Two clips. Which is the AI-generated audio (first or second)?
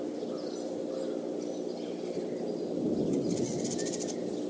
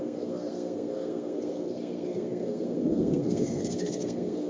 second